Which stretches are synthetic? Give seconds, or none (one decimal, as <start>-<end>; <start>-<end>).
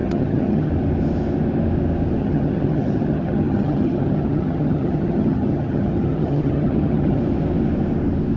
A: 0.0-0.7; 2.2-7.2